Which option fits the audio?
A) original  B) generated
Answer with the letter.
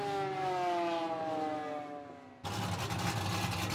A